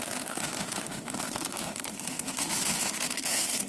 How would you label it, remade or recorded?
remade